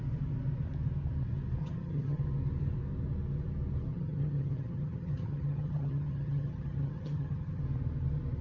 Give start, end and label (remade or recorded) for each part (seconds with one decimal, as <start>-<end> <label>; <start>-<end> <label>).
0.0-1.6 recorded; 1.6-2.2 remade; 2.2-3.9 recorded; 3.9-7.6 remade; 7.6-8.4 recorded